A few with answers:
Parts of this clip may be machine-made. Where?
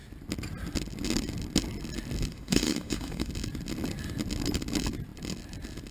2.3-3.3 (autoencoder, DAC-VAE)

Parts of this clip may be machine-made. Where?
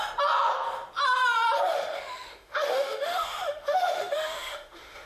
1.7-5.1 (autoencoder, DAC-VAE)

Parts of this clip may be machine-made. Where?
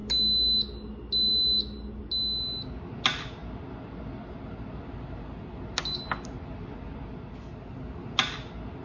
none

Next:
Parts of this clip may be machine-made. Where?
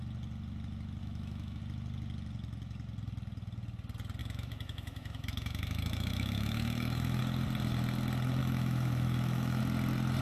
1.0-1.6 (autoencoder, DAC-VAE); 4.2-7.2; 8.4-9.6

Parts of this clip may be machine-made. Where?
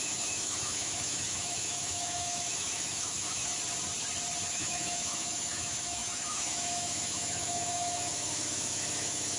0.0-3.5 (autoencoder, DAC-VAE); 4.5-9.4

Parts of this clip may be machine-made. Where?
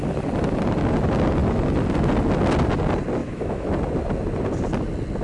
3.2-3.7 (autoencoder, DAC-VAE)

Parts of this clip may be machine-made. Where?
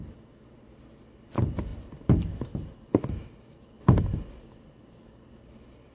none